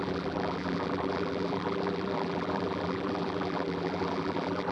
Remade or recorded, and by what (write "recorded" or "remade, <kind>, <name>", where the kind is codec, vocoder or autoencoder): remade, vocoder, BigVGAN v2